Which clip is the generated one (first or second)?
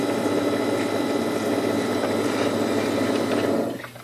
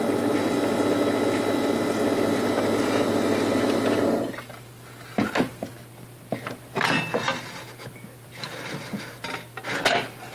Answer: first